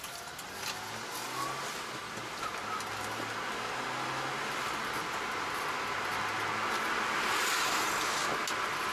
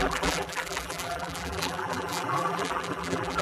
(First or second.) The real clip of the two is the first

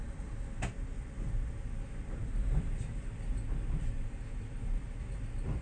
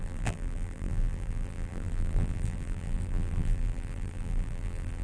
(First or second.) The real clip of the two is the first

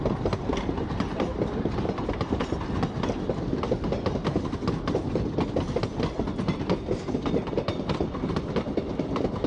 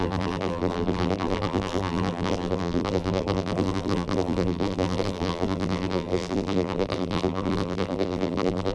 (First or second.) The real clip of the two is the first